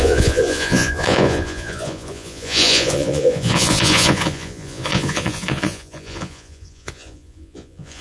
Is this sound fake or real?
fake